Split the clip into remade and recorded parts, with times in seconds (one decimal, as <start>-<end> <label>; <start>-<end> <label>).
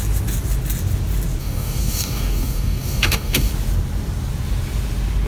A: 0.0-1.4 recorded; 1.4-3.5 remade; 3.5-5.3 recorded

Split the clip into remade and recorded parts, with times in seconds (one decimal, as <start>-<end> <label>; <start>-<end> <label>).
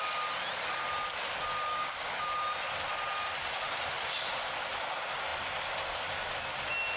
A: 0.0-1.7 recorded; 1.7-2.3 remade; 2.3-7.0 recorded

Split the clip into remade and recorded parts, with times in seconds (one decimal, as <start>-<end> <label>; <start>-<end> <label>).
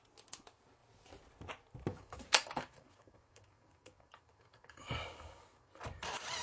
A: 0.0-1.9 recorded; 1.9-5.7 remade; 5.7-6.4 recorded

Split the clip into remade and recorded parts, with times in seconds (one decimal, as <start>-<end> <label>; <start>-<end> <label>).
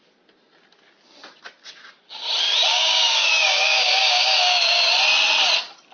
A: 0.0-2.7 recorded; 2.7-4.9 remade; 4.9-5.9 recorded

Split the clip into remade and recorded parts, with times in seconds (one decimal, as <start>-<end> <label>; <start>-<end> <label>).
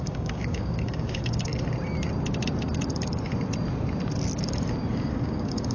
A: 0.0-1.5 remade; 1.5-4.9 recorded; 4.9-5.7 remade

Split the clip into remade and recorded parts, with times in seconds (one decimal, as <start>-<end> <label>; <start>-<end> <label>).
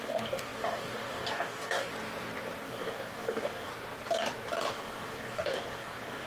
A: 0.0-1.9 remade; 1.9-2.6 recorded; 2.6-3.7 remade; 3.7-4.7 recorded; 4.7-6.3 remade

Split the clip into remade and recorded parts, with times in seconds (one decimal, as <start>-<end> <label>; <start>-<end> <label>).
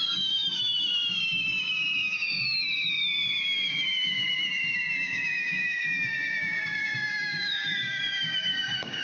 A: 0.0-9.0 remade